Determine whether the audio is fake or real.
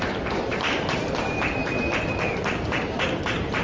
fake